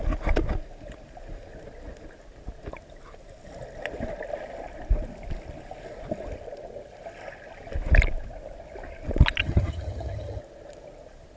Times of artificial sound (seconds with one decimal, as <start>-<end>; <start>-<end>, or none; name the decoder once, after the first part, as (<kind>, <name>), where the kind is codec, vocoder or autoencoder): 9.4-10.4 (vocoder, HiFi-GAN)